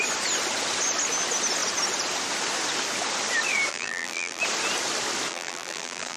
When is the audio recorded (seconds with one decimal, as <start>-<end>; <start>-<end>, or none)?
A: 0.0-3.7; 4.4-5.3